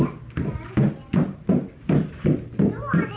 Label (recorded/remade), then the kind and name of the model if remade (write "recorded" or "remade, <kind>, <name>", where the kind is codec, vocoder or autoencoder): recorded